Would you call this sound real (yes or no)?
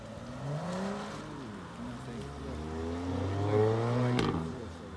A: yes